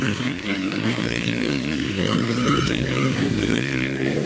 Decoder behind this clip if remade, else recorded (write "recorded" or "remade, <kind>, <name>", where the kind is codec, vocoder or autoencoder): remade, codec, SNAC